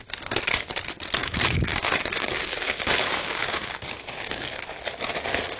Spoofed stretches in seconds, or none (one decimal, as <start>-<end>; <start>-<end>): 1.2-4.6